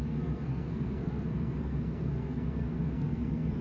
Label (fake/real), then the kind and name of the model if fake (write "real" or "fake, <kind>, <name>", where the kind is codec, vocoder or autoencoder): fake, codec, SNAC